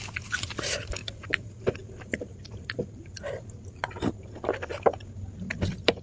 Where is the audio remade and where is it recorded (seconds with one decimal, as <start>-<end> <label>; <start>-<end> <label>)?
0.0-1.0 recorded; 1.0-4.0 remade; 4.0-6.0 recorded